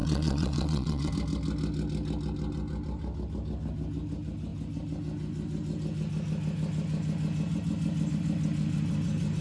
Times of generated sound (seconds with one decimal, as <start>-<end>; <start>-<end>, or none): 0.0-1.1